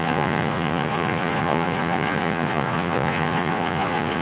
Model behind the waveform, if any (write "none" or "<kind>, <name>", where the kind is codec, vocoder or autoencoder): vocoder, Vocos